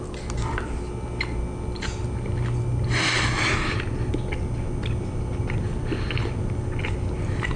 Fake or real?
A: real